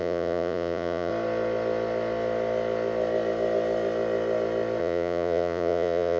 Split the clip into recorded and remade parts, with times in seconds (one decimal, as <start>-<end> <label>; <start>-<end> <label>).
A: 0.0-1.1 remade; 1.1-4.8 recorded; 4.8-6.2 remade